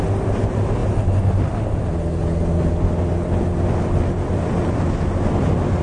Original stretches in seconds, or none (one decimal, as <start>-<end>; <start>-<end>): 0.0-5.8